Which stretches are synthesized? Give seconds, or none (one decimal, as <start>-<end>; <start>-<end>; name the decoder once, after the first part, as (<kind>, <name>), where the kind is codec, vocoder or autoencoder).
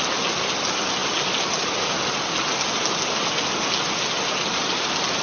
none